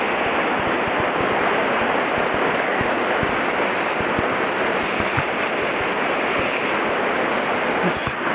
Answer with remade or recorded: recorded